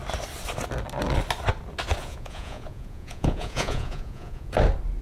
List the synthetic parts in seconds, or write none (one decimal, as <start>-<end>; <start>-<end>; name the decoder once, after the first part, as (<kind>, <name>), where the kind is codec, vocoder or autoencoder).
2.0-4.5 (vocoder, Vocos)